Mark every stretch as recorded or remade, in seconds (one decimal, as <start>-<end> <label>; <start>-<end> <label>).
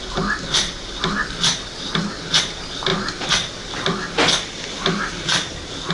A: 0.0-5.9 recorded